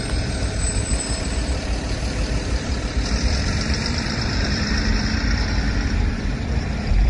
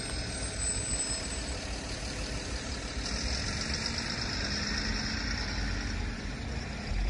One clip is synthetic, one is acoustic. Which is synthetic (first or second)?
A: first